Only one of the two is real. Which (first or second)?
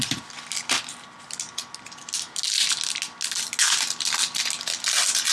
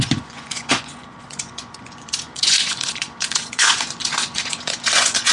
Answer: first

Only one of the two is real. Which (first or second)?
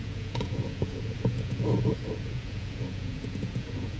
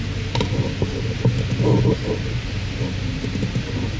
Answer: second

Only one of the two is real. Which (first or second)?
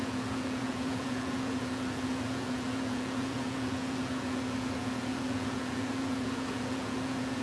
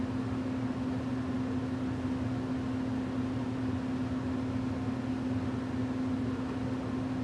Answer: second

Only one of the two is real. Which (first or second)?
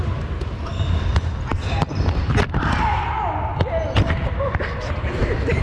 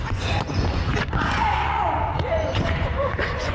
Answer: first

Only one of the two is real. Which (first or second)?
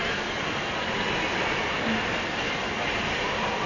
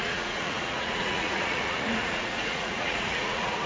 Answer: first